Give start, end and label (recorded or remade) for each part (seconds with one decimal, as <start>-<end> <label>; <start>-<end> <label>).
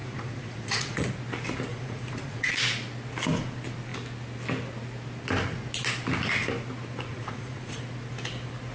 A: 0.0-1.1 remade; 1.1-1.7 recorded; 1.7-2.5 remade; 2.5-7.1 recorded; 7.1-7.8 remade; 7.8-8.7 recorded